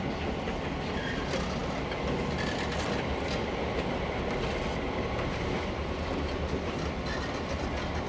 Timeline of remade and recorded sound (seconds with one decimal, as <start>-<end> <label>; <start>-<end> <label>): 0.0-8.1 recorded